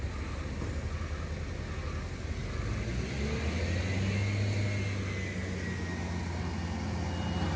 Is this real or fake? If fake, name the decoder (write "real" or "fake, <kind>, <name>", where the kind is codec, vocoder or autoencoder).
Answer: real